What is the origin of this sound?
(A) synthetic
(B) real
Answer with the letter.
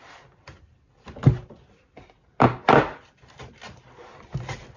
B